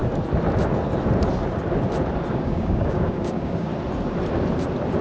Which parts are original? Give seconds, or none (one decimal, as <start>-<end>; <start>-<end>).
0.0-2.3; 3.7-5.0